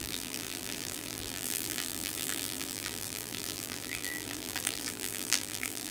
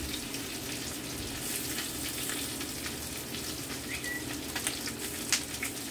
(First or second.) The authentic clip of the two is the second